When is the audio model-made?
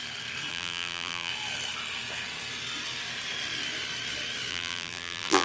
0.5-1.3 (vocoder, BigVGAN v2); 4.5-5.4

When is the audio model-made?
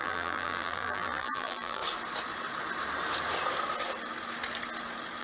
0.0-1.8 (vocoder, BigVGAN v2)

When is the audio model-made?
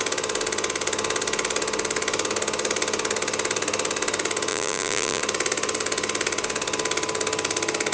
4.5-5.2 (vocoder, BigVGAN v2)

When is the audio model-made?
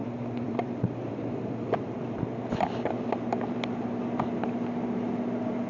0.0-2.5 (vocoder, BigVGAN v2)